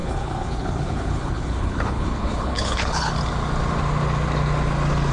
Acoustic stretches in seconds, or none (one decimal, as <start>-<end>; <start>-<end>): 3.1-5.1